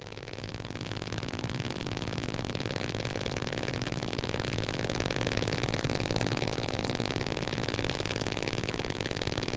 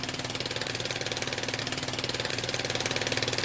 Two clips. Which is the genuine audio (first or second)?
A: second